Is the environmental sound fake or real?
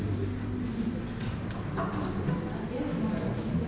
real